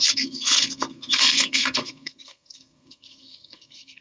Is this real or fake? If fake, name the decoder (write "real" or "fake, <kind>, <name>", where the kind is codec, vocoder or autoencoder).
fake, codec, SNAC